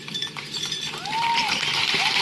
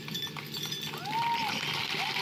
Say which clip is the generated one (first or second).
first